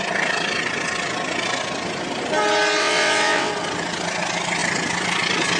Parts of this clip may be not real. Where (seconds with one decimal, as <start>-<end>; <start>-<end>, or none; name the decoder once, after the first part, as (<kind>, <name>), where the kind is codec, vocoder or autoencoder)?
2.8-3.5 (vocoder, WaveNeXt)